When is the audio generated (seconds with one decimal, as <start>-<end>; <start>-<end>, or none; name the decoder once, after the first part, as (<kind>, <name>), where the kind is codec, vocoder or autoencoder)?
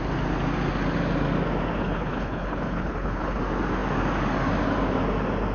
1.8-3.4 (codec, HILCodec)